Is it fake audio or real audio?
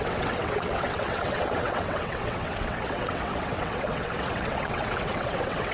fake